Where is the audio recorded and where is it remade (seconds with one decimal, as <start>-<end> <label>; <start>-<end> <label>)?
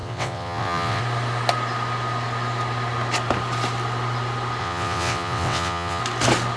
0.0-1.0 remade; 1.0-4.6 recorded; 4.6-6.0 remade; 6.0-6.6 recorded